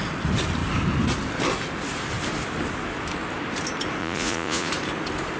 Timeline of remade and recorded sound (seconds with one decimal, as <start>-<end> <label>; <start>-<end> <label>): 0.0-4.0 recorded; 4.0-4.7 remade; 4.7-5.4 recorded